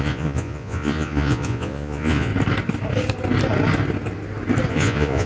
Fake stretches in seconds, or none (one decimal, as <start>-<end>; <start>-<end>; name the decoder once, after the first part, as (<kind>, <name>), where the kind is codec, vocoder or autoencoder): 0.0-2.3 (vocoder, Vocos); 4.7-5.3